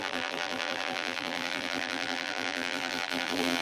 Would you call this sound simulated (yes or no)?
yes